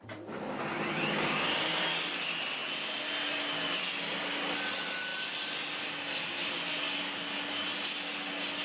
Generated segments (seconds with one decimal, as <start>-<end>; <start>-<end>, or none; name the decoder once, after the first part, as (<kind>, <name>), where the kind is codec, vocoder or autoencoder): none